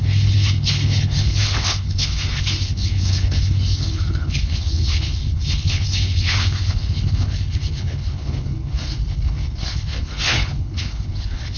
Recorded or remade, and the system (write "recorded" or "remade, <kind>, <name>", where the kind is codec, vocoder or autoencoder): remade, codec, HILCodec